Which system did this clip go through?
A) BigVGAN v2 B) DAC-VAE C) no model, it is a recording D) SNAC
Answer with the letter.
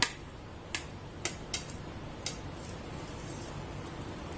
C